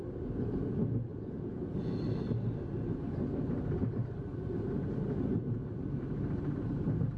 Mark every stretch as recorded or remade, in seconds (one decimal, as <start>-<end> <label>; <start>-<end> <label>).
0.0-1.1 recorded; 1.1-2.0 remade; 2.0-7.2 recorded